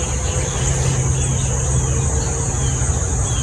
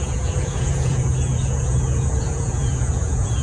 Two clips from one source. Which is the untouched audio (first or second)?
first